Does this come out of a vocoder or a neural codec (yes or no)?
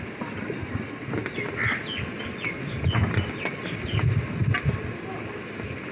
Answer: no